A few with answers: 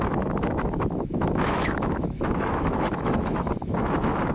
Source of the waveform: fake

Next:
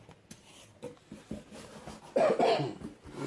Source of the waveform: real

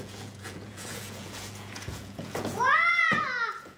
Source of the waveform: fake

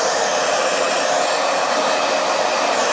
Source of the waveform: real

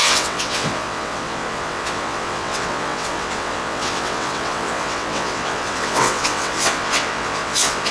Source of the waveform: fake